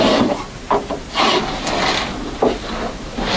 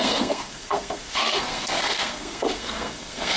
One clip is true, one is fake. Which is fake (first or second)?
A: second